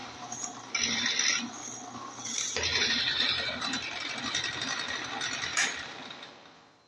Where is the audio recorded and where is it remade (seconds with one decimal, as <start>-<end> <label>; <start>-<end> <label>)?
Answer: 0.0-0.7 remade; 0.7-2.7 recorded; 2.7-4.2 remade; 4.2-5.5 recorded; 5.5-6.3 remade; 6.3-6.9 recorded